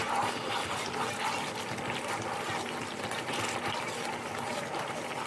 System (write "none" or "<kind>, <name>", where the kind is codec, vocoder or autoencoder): none